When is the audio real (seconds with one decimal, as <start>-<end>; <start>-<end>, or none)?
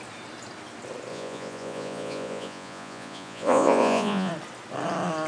0.0-1.1; 4.3-5.3